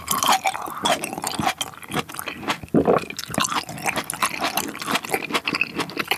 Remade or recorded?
recorded